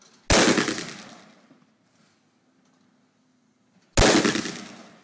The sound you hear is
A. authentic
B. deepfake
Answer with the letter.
A